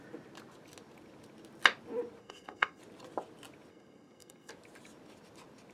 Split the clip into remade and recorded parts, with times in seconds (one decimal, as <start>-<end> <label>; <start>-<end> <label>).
0.0-2.2 recorded; 2.2-2.8 remade; 2.8-3.7 recorded; 3.7-4.5 remade; 4.5-5.7 recorded